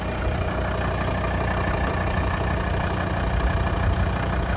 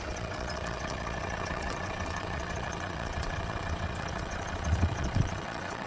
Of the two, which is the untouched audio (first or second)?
first